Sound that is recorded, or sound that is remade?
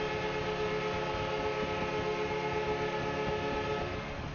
recorded